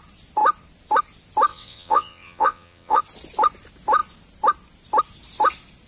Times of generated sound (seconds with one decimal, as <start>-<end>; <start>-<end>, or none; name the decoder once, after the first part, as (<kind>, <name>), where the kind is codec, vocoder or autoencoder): 1.5-3.0 (vocoder, WaveNeXt)